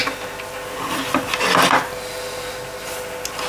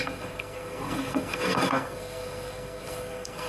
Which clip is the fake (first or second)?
second